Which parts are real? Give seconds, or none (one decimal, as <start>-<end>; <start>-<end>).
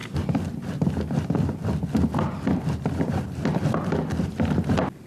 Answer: 0.0-5.1